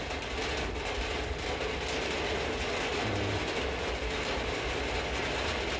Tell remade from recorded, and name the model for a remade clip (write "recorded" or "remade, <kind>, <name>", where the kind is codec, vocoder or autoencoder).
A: recorded